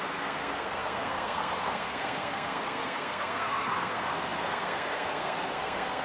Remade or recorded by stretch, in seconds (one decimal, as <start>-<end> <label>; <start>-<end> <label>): 0.0-6.0 remade